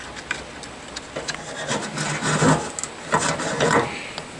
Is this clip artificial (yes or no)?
no